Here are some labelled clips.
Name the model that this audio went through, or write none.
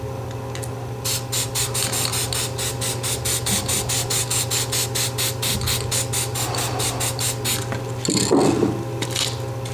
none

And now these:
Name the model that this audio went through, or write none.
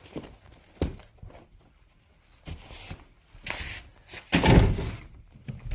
none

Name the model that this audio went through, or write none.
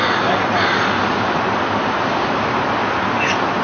none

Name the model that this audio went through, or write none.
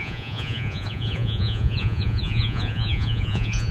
vocoder, Vocos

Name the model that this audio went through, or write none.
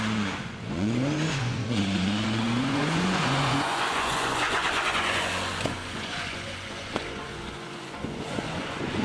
vocoder, Vocos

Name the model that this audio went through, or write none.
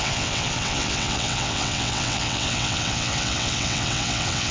vocoder, WaveNeXt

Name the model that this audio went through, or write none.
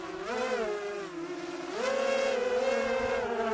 none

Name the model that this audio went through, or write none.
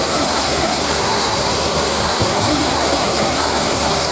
codec, SNAC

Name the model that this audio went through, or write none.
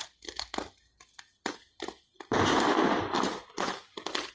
none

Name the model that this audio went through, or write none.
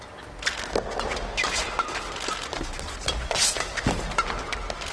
none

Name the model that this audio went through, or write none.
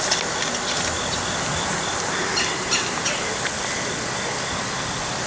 none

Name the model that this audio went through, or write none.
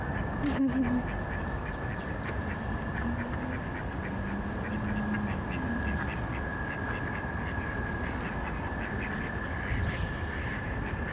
none